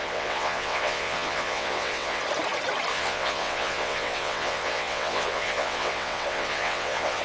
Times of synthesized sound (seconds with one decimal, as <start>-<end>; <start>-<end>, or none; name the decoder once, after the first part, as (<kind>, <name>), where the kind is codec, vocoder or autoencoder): 0.0-2.2 (vocoder, WaveNeXt); 2.9-7.2